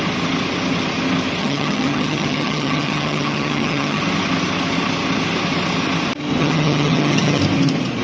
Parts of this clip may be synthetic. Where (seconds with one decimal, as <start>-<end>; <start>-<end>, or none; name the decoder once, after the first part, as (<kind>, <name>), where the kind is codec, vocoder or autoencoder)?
1.4-4.0 (vocoder, HiFi-GAN); 6.4-7.4